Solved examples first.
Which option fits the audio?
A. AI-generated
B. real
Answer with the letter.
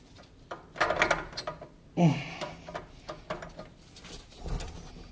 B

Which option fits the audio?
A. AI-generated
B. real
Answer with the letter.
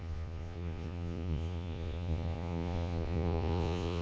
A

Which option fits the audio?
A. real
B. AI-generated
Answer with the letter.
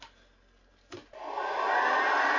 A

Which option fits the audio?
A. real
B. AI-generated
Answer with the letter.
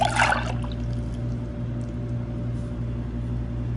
A